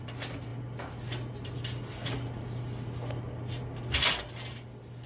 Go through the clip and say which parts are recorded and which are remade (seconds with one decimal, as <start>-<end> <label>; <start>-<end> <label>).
0.0-5.1 recorded